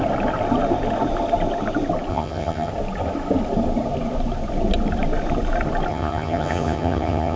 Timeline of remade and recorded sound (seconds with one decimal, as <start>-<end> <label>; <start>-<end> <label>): 0.0-2.1 recorded; 2.1-2.7 remade; 2.7-5.9 recorded; 5.9-7.4 remade